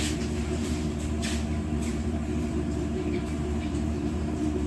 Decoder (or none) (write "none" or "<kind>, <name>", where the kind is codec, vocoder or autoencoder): vocoder, BigVGAN v2